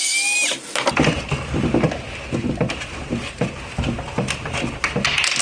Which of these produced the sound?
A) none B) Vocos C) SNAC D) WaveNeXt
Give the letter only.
A